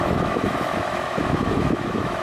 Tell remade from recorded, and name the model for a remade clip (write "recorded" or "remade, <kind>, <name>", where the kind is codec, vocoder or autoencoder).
remade, autoencoder, DAC-VAE